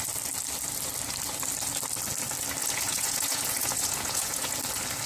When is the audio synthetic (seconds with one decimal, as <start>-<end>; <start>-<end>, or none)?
2.6-4.6